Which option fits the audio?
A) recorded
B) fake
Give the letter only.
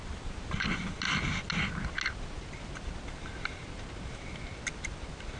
A